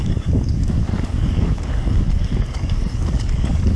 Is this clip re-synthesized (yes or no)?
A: yes